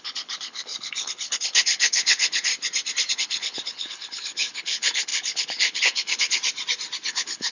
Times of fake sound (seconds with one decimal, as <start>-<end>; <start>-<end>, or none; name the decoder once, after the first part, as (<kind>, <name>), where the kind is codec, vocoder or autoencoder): 0.0-2.5 (codec, HILCodec); 3.1-6.4; 7.1-7.5